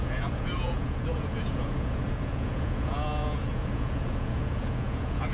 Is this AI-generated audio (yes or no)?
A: yes